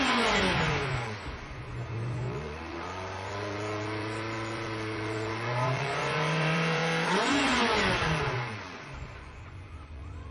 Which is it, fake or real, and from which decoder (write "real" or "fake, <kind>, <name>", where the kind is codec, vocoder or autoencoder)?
fake, vocoder, Vocos